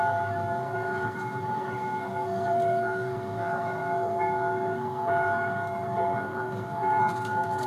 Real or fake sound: fake